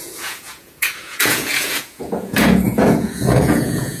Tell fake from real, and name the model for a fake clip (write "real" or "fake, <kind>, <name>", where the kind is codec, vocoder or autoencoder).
fake, vocoder, Vocos